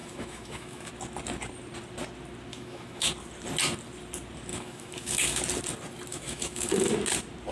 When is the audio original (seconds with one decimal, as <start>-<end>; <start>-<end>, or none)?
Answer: 0.9-2.5; 3.1-4.5; 5.4-6.1; 6.9-7.5